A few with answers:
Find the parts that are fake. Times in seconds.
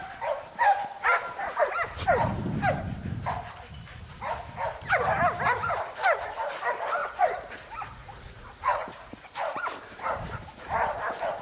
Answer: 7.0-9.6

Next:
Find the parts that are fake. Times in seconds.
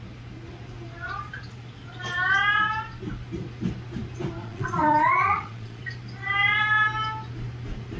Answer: 4.4-5.8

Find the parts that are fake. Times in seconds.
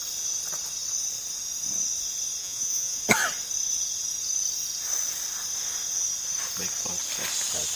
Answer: 2.4-3.0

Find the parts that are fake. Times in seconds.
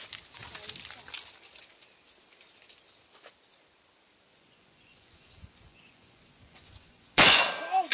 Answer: 4.3-7.4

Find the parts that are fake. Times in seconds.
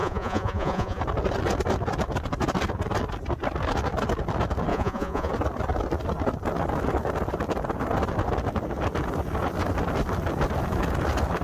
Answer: 0.0-1.0; 4.7-5.3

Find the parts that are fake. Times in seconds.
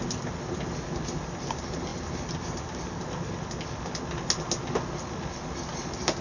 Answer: none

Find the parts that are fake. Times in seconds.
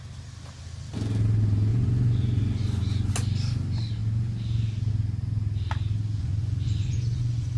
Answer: 1.7-3.1; 6.2-7.6